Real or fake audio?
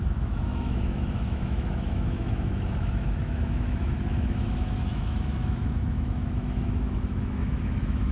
fake